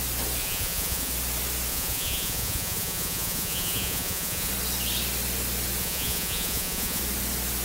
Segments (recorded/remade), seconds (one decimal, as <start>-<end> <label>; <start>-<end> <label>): 0.0-0.4 recorded; 0.4-1.1 remade; 1.1-1.7 recorded; 1.7-4.5 remade; 4.5-5.8 recorded; 5.8-7.0 remade; 7.0-7.6 recorded